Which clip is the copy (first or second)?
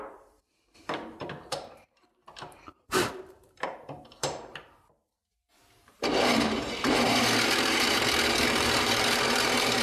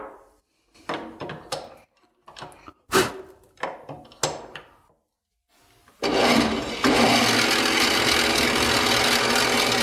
first